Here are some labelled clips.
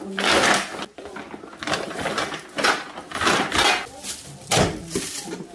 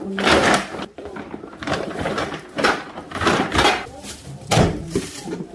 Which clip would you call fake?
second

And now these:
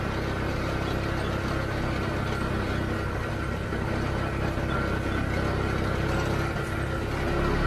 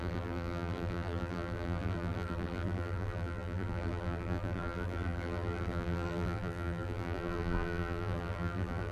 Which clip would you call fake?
second